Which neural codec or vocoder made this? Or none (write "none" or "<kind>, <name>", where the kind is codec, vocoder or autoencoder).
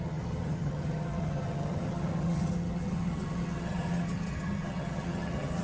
vocoder, HiFi-GAN